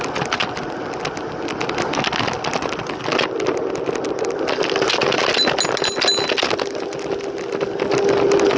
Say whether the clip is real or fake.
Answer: real